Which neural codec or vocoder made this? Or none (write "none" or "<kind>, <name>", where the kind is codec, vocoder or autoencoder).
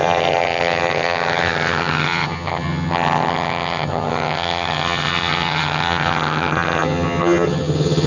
vocoder, HiFi-GAN